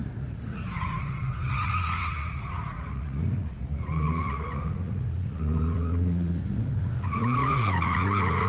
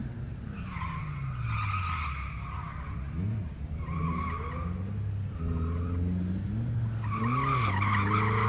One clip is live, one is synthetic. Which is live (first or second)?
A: second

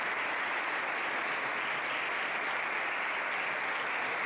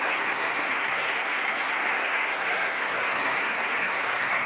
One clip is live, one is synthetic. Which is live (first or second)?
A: first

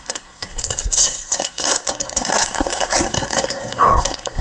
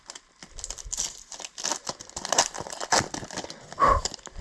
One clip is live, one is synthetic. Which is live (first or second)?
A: second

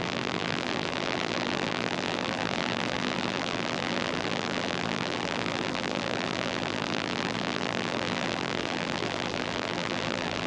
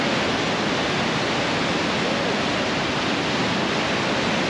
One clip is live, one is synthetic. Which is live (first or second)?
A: second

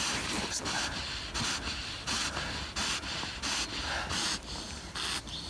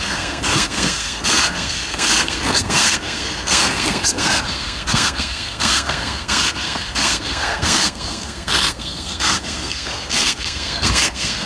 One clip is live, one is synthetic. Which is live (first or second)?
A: first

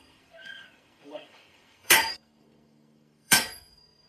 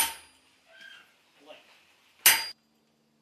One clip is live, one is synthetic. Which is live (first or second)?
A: second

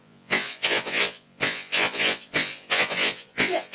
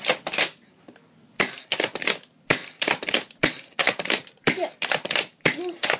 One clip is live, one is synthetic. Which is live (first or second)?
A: second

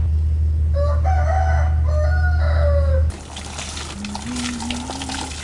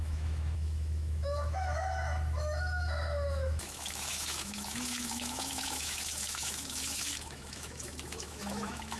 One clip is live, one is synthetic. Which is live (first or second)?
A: first